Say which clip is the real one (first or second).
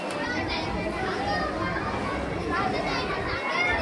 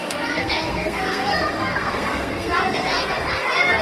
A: first